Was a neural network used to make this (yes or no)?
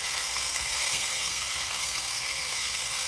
yes